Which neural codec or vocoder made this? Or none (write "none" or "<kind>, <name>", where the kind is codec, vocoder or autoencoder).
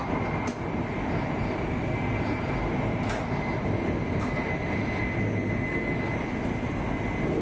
none